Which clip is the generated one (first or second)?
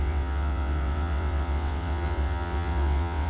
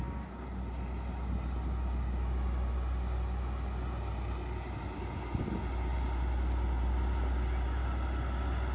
first